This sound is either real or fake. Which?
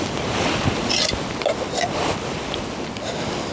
real